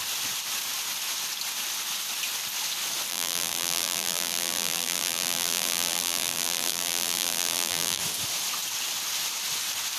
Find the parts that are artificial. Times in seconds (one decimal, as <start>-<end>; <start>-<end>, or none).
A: 3.1-8.0